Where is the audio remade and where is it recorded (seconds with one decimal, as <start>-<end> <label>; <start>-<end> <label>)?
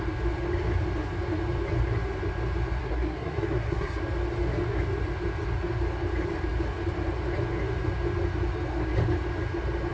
0.0-2.8 recorded; 2.8-4.0 remade; 4.0-9.9 recorded